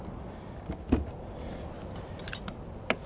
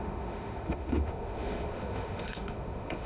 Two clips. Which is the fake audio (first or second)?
second